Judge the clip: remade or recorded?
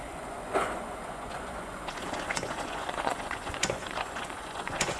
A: remade